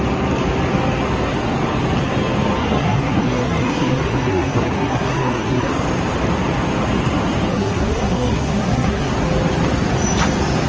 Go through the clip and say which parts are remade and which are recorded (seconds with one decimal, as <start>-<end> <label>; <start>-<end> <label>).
0.0-2.6 recorded; 2.6-5.7 remade; 5.7-7.5 recorded; 7.5-9.1 remade; 9.1-10.7 recorded